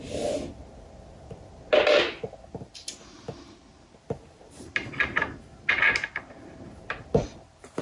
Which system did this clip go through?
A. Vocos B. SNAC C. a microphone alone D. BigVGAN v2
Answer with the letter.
C